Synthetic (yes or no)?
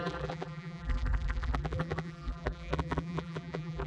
yes